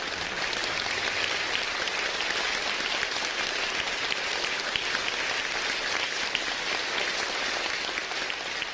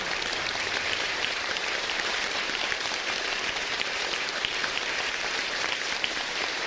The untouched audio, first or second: first